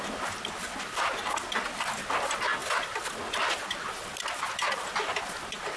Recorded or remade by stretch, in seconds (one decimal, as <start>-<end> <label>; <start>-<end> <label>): 0.0-5.8 recorded